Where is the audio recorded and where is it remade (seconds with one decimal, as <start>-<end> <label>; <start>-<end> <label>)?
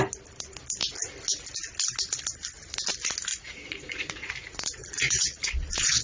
0.0-3.3 recorded; 3.3-4.3 remade; 4.3-4.8 recorded; 4.8-6.0 remade